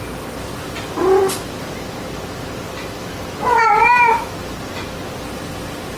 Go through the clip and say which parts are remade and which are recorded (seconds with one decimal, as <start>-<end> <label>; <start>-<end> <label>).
0.0-3.8 recorded; 3.8-4.4 remade; 4.4-6.0 recorded